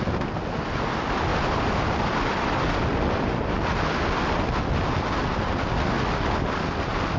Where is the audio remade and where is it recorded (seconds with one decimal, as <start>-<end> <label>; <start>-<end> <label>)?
0.0-7.2 recorded